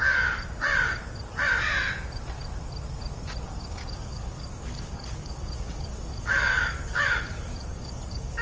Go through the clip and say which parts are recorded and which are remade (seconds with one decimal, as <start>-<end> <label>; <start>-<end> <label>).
0.0-3.8 recorded; 3.8-8.4 remade